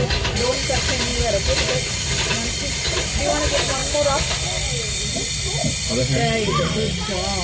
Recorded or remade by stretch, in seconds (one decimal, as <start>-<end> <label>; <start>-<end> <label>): 0.0-7.4 recorded